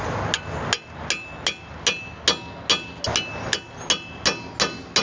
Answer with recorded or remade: recorded